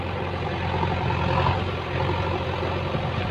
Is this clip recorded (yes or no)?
yes